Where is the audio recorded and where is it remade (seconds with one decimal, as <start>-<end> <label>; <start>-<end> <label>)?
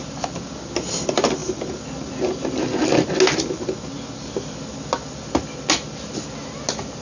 0.0-7.0 recorded